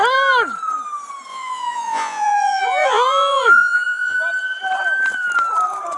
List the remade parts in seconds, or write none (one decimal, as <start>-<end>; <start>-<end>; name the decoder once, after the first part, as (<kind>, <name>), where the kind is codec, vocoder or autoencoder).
1.3-4.2 (vocoder, Vocos)